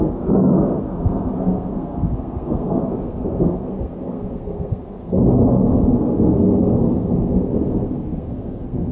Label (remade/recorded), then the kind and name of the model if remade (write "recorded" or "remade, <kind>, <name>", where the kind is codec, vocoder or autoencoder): remade, codec, SNAC